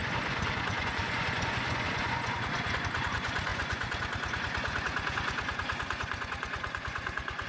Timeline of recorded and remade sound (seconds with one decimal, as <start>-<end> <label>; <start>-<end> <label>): 0.0-7.5 remade